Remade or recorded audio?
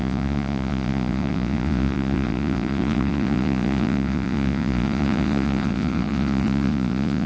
remade